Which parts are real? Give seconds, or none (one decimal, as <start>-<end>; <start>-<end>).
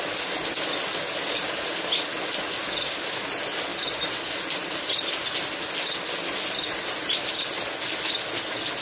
0.0-8.8